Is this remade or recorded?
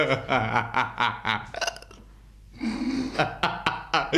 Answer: recorded